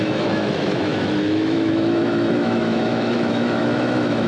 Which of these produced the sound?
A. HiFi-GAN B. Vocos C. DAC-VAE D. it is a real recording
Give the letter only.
C